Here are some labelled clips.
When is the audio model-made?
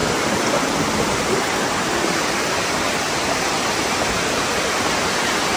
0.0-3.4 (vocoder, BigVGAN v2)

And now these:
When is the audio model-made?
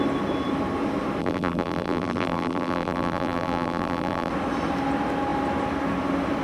1.2-4.3 (vocoder, BigVGAN v2)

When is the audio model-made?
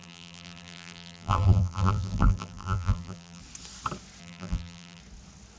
0.0-3.4 (vocoder, BigVGAN v2); 4.2-5.0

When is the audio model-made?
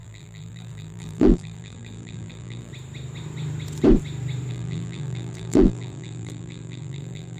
0.0-2.7 (vocoder, BigVGAN v2); 4.5-7.4